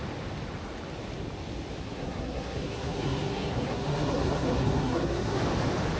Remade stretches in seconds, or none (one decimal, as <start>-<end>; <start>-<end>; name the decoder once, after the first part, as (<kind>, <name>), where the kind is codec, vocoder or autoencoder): 1.8-5.4 (codec, SNAC)